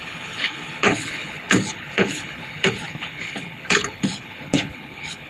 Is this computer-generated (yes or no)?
yes